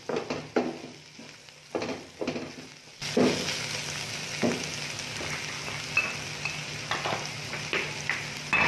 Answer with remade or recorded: recorded